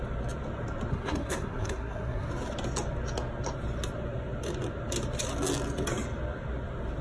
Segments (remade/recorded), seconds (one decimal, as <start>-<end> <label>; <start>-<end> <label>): 0.0-0.9 recorded; 0.9-2.3 remade; 2.3-7.0 recorded